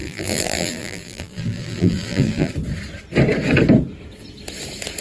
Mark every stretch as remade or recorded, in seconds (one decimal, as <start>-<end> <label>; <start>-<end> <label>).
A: 0.0-2.5 remade; 2.5-5.0 recorded